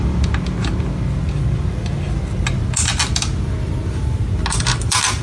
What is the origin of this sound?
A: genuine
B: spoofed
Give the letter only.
A